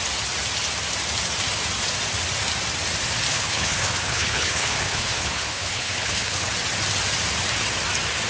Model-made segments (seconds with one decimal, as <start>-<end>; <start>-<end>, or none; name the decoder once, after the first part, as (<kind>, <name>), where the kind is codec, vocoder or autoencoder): 3.3-6.5 (codec, HILCodec)

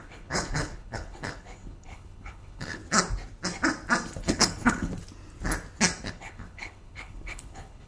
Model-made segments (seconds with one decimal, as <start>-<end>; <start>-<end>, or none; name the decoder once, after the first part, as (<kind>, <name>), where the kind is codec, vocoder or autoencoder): 0.0-2.8 (codec, HILCodec); 4.2-4.9; 6.1-7.9

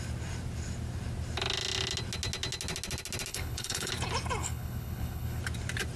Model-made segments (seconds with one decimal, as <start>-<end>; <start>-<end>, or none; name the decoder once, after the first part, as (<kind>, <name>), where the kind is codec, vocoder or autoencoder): 3.3-3.9 (codec, HILCodec); 4.4-5.4

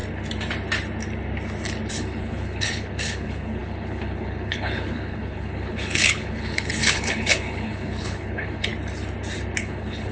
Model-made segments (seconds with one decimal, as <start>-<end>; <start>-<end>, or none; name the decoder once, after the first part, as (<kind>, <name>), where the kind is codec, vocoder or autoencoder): 1.9-8.7 (codec, HILCodec); 9.6-10.1

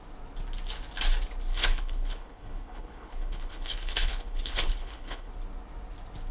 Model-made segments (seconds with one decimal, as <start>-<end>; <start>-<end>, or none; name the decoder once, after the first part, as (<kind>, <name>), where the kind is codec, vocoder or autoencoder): 1.5-5.3 (codec, HILCodec)